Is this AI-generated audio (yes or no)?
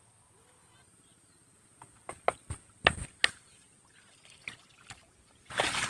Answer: no